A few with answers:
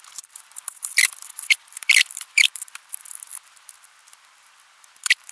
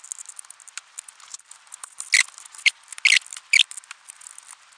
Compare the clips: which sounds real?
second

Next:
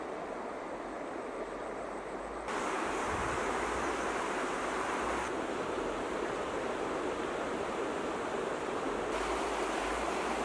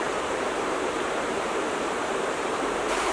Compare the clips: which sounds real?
first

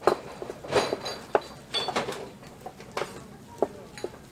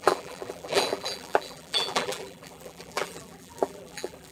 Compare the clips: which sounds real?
first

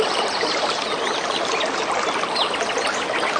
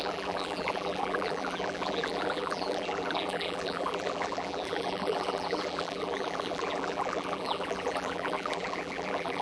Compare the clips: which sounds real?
first